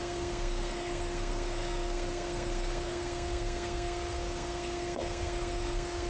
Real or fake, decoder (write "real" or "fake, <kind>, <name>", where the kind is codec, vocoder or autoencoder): fake, codec, SNAC